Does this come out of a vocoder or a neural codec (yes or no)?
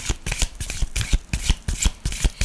no